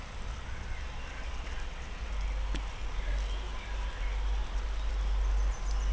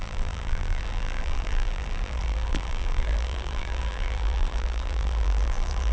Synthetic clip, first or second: second